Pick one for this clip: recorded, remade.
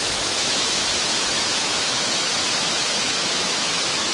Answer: remade